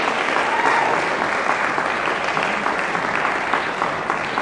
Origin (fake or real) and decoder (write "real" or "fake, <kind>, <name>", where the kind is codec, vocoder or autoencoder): real